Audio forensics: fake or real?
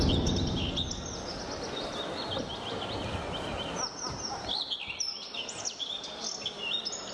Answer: real